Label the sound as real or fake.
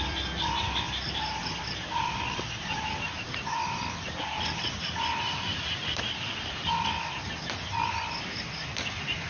fake